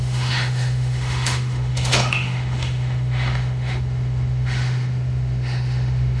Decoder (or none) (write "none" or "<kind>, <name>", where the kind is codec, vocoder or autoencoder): autoencoder, DAC-VAE